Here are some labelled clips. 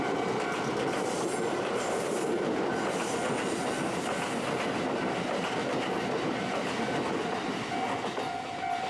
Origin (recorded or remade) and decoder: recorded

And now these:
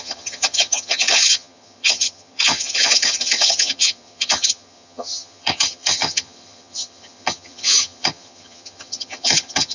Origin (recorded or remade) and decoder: remade, vocoder, HiFi-GAN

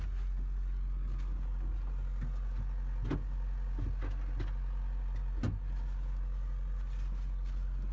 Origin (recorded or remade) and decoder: recorded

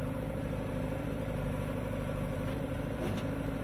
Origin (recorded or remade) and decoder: remade, vocoder, BigVGAN v2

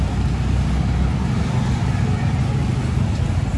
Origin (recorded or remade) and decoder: recorded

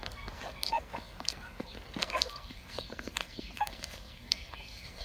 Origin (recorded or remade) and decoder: remade, codec, SNAC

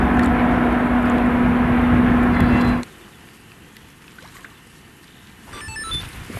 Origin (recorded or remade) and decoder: recorded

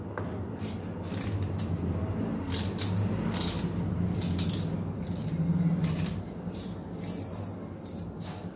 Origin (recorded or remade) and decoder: recorded